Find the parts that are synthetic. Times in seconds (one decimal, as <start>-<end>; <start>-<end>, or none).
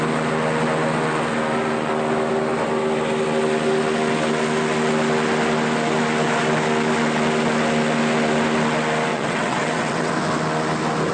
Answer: 9.1-10.1